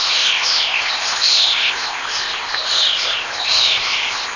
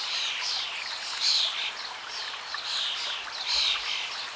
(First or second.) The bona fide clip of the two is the second